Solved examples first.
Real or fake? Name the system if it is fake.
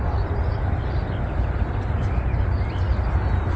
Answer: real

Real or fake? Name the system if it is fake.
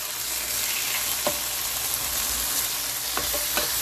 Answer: real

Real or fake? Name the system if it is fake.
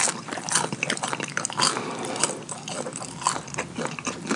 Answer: real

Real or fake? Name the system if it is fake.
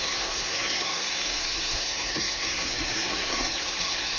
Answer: fake, codec, SNAC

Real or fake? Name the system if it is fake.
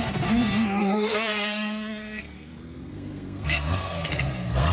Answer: fake, codec, SNAC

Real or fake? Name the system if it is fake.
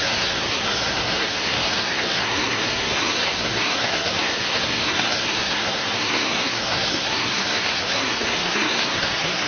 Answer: fake, codec, SNAC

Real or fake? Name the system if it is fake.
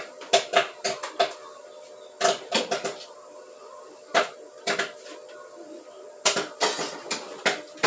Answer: fake, vocoder, BigVGAN v2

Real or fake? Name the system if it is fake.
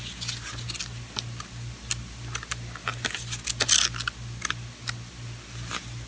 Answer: real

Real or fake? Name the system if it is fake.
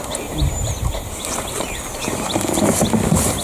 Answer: real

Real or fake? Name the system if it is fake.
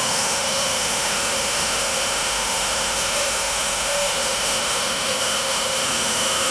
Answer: fake, autoencoder, DAC-VAE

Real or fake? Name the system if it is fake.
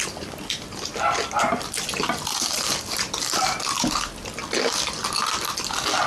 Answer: real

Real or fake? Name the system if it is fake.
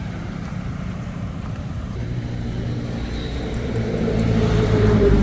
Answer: fake, vocoder, BigVGAN v2